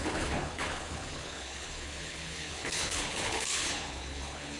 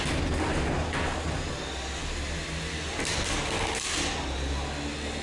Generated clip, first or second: first